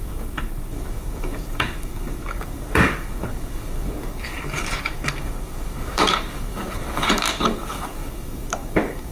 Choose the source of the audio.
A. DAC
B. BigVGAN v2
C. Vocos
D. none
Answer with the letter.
A